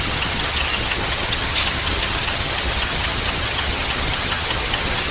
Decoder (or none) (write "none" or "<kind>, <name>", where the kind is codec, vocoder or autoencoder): vocoder, HiFi-GAN